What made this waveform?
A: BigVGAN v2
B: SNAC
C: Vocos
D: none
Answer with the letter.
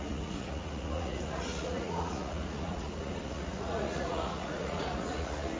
C